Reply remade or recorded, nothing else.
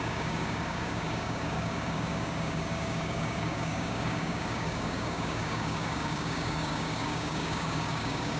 remade